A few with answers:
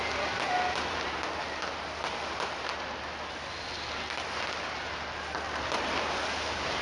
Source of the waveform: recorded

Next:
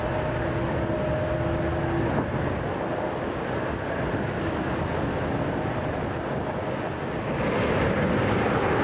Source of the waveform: recorded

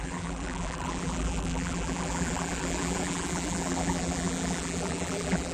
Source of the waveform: remade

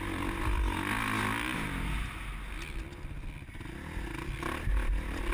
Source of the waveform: recorded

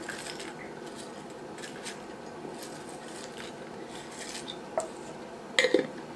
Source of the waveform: recorded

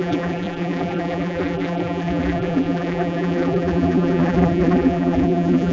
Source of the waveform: remade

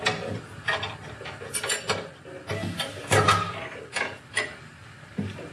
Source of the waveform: recorded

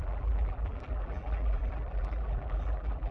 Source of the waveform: remade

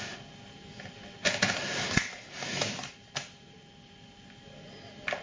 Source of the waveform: recorded